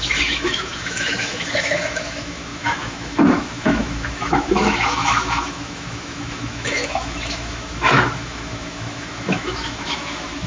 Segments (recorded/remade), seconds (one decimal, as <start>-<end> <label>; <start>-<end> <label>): 0.0-10.5 remade

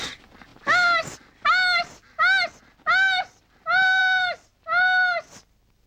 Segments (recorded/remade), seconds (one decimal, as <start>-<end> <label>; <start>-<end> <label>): 0.0-5.9 recorded

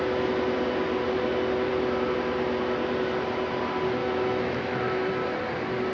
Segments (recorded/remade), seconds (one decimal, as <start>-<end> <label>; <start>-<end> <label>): 0.0-4.0 recorded; 4.0-5.1 remade; 5.1-5.9 recorded

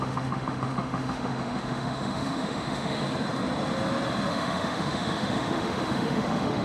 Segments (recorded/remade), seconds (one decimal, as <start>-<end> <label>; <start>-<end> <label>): 0.0-3.0 remade; 3.0-4.3 recorded; 4.3-6.6 remade

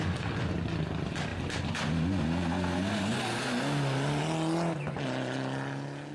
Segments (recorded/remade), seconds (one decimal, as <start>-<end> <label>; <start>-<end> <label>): 0.0-6.1 recorded